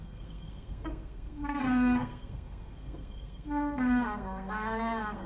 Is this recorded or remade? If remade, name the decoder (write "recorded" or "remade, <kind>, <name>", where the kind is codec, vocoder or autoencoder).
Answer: remade, codec, SNAC